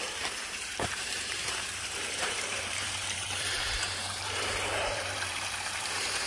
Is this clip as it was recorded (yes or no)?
no